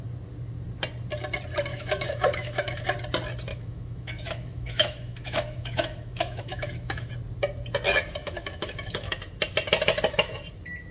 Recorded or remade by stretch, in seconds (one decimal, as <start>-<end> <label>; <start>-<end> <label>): 0.0-1.7 recorded; 1.7-2.8 remade; 2.8-3.5 recorded; 3.5-7.1 remade; 7.1-8.2 recorded; 8.2-9.1 remade; 9.1-10.9 recorded